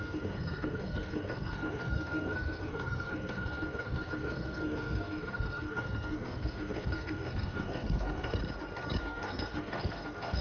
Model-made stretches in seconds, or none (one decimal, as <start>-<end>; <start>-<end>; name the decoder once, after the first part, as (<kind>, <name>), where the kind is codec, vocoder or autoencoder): 0.0-8.4 (codec, SNAC); 9.0-10.4